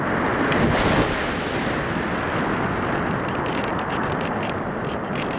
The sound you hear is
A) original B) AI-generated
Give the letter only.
A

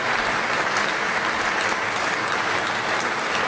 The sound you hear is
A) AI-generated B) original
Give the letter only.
B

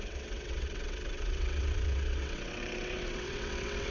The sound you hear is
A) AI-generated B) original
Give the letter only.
A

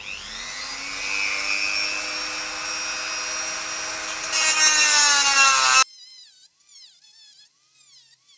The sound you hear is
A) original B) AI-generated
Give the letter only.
A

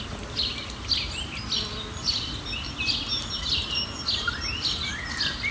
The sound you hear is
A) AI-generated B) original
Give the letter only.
B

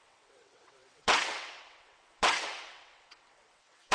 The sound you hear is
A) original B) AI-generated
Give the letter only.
B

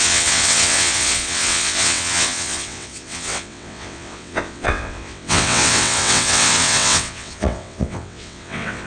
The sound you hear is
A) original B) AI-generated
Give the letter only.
B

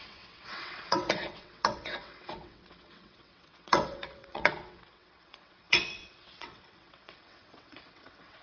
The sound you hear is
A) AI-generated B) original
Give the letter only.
A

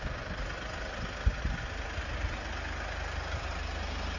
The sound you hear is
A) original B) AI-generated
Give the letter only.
A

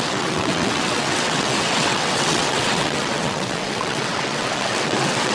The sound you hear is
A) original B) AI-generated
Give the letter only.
B